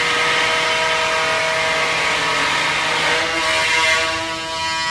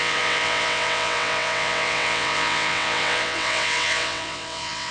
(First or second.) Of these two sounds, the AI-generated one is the second